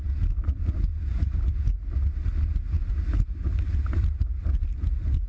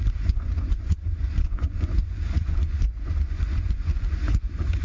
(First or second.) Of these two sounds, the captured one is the first